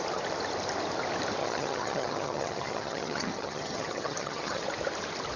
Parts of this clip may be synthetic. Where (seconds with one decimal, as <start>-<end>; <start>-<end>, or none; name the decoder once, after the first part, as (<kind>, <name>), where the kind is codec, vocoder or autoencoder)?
1.4-4.6 (vocoder, HiFi-GAN)